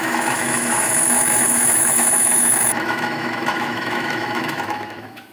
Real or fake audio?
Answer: fake